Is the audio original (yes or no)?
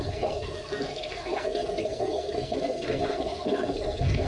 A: no